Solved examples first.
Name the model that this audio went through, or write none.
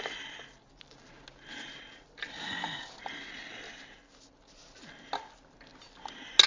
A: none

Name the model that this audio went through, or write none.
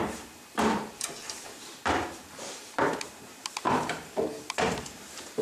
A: vocoder, BigVGAN v2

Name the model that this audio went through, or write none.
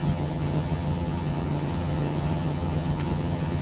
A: vocoder, HiFi-GAN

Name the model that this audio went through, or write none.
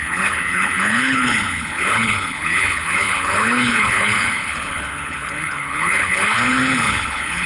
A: codec, HILCodec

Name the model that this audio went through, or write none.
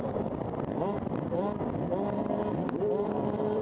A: vocoder, BigVGAN v2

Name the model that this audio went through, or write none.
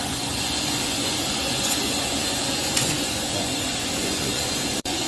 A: vocoder, Vocos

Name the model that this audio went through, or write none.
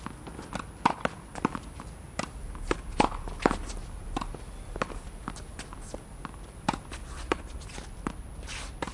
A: none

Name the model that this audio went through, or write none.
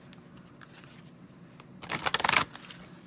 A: none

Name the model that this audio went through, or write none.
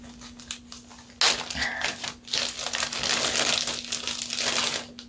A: none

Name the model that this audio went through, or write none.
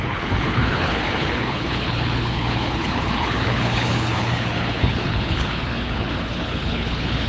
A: codec, HILCodec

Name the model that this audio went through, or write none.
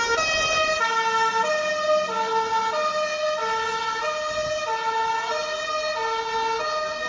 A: none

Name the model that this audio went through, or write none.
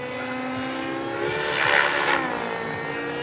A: none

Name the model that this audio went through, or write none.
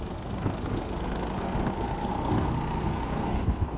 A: codec, SNAC